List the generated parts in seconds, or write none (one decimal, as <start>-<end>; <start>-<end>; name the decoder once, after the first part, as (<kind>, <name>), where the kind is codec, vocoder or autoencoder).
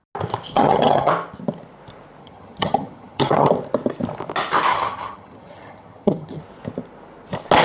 0.5-1.1 (vocoder, HiFi-GAN); 2.2-3.5; 4.7-6.4